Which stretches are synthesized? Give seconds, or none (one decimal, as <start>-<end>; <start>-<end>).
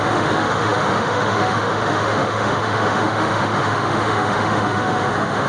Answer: 0.0-5.5